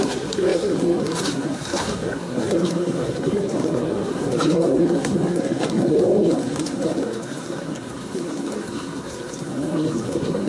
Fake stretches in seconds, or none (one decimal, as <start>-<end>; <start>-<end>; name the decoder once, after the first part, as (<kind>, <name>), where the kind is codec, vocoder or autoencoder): 0.0-10.5 (codec, SNAC)